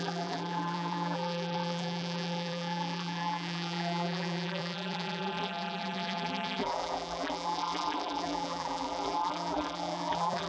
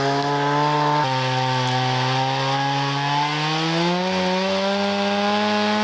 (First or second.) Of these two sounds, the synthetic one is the first